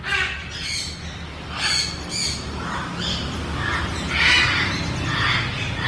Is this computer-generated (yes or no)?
no